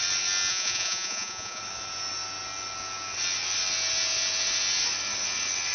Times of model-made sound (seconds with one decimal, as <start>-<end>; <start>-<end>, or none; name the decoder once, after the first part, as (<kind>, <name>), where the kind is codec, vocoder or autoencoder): 0.5-1.6 (vocoder, Vocos)

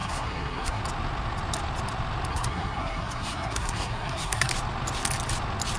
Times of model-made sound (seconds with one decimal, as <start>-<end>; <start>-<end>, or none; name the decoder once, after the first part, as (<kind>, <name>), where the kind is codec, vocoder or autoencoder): 0.0-0.8 (codec, SNAC); 2.3-4.5

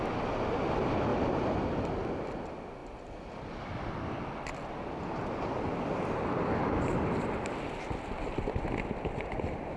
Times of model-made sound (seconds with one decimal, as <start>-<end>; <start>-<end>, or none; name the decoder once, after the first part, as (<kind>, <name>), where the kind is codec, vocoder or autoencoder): none

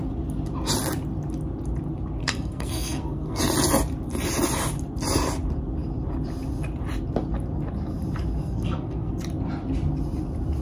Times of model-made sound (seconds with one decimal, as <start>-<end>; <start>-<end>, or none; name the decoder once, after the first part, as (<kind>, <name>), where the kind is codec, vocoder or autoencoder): 2.2-3.4 (codec, SNAC); 8.4-9.2

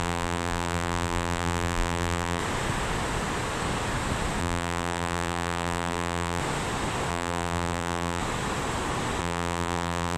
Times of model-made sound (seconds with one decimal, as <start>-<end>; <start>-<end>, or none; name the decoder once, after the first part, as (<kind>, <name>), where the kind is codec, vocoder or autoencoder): 0.0-2.4 (vocoder, BigVGAN v2); 4.4-6.4; 7.1-8.2; 9.2-10.2